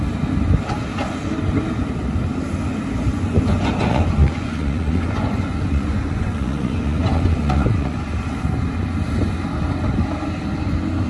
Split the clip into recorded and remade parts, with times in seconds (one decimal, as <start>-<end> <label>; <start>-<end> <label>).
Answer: 0.0-3.1 recorded; 3.1-8.1 remade; 8.1-11.1 recorded